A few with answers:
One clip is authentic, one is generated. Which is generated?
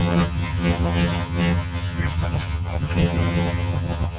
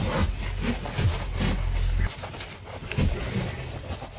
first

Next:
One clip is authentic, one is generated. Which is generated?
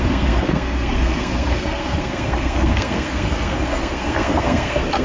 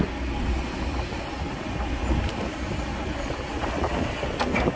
first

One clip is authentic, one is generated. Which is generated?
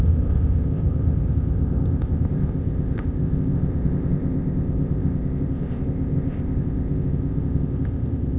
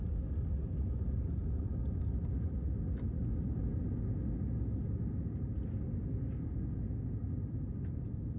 first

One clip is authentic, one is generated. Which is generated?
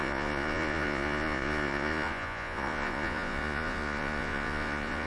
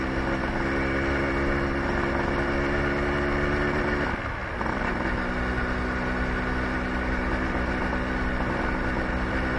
first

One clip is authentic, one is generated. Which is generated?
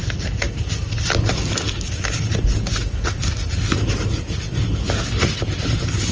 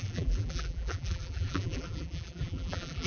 second